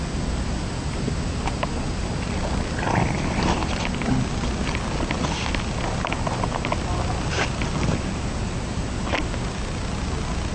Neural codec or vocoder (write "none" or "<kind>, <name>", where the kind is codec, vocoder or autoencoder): none